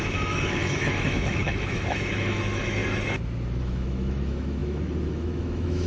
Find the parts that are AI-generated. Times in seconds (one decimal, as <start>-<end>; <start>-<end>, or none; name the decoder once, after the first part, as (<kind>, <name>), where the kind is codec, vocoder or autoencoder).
0.0-2.8 (autoencoder, DAC-VAE); 3.6-5.9